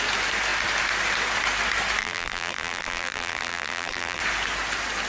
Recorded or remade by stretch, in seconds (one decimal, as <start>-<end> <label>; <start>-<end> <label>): 0.0-2.0 recorded; 2.0-4.2 remade; 4.2-5.1 recorded